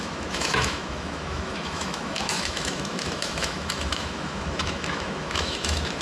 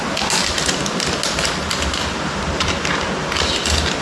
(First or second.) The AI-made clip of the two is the first